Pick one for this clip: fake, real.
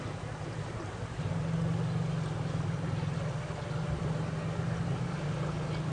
real